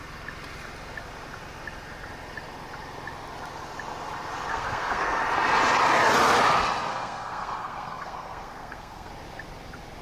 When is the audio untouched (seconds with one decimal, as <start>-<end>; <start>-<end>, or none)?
0.0-4.5; 5.2-6.9; 9.1-10.0